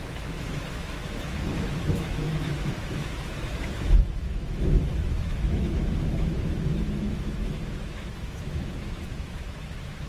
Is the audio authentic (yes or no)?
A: no